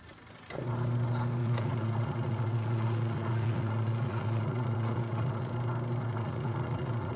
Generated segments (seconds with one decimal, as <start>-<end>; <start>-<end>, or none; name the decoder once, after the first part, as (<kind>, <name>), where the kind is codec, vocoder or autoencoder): 1.4-5.5 (vocoder, Vocos); 6.0-7.2